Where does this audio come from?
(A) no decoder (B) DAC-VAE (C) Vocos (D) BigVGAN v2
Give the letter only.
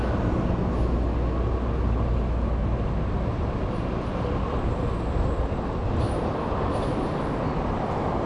A